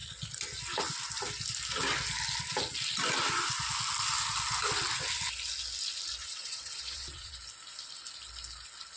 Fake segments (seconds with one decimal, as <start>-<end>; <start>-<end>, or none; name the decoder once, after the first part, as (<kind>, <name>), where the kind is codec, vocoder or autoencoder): 6.2-7.4 (vocoder, WaveNeXt)